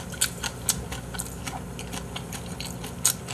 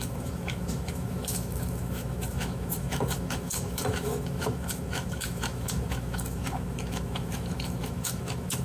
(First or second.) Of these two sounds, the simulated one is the second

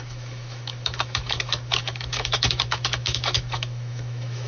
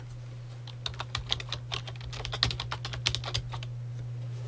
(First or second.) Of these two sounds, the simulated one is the first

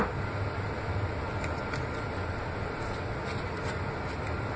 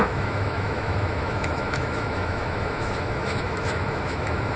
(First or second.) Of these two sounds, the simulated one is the second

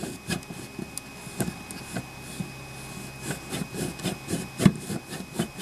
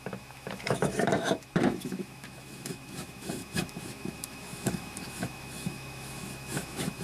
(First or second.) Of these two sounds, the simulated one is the second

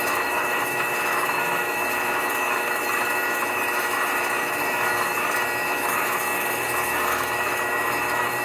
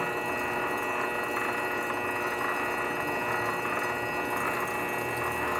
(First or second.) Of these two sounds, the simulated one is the first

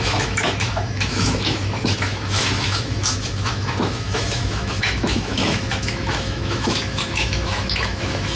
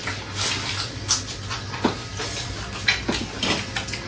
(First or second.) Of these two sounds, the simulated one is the first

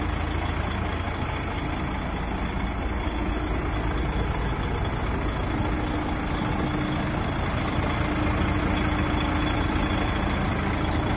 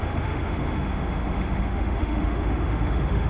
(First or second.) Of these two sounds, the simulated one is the second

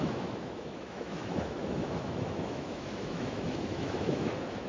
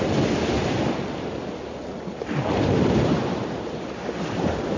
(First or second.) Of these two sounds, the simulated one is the first